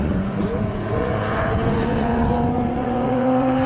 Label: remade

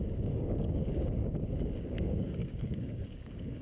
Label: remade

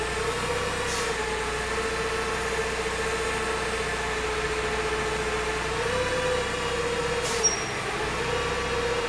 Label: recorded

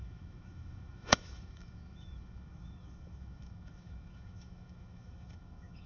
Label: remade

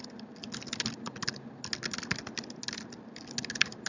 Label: recorded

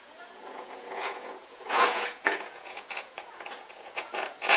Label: remade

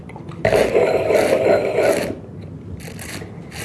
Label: recorded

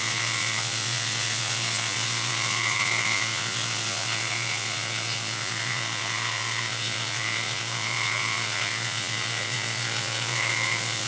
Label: remade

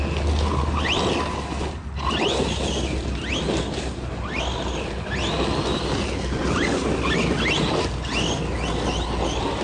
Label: recorded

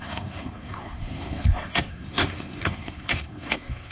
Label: remade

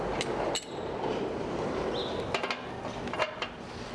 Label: recorded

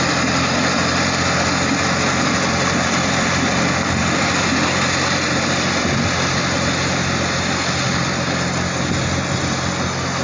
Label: recorded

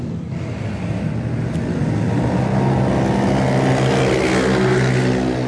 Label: recorded